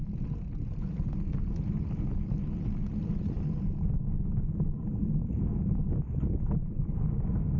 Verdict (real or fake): real